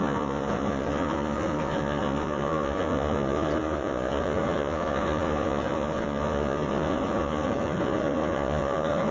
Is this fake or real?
fake